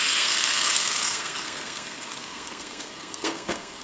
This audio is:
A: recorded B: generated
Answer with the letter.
B